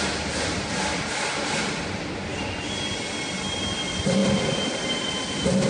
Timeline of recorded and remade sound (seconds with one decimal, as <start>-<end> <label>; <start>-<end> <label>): 0.0-5.7 recorded